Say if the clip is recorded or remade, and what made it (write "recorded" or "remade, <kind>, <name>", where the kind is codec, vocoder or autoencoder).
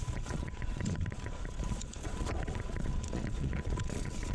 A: remade, vocoder, Vocos